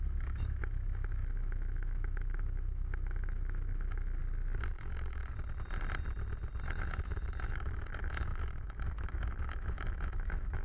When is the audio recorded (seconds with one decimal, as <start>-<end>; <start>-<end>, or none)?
4.2-4.7; 5.2-6.6